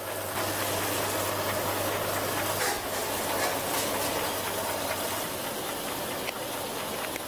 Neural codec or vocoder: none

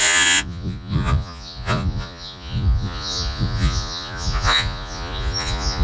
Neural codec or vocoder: vocoder, Vocos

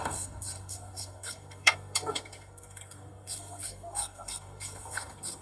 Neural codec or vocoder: codec, SNAC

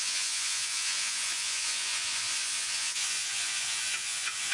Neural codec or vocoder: vocoder, Vocos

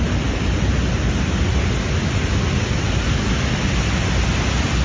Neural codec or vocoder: none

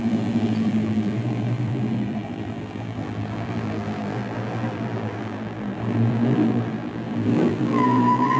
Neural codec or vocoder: vocoder, BigVGAN v2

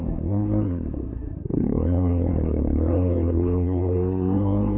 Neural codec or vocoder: codec, SNAC